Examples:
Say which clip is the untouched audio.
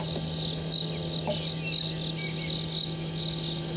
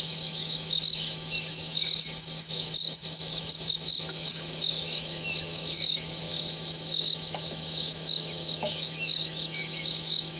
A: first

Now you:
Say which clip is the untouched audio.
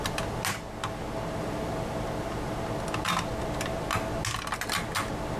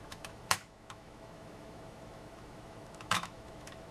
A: first